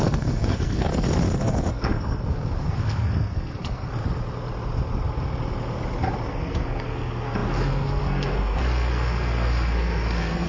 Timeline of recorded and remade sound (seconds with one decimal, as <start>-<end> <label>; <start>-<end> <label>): 0.0-0.9 remade; 0.9-1.7 recorded; 1.7-4.0 remade; 4.0-6.3 recorded; 6.3-10.5 remade